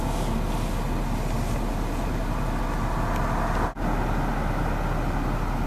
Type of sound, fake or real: real